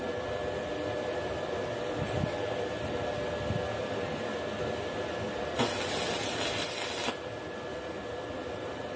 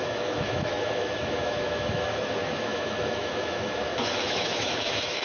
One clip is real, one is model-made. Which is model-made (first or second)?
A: second